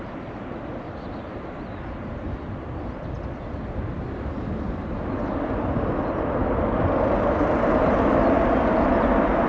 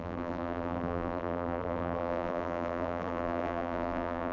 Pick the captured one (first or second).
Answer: first